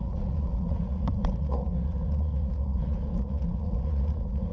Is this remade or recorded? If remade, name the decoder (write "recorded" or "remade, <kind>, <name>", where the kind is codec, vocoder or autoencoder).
remade, vocoder, Vocos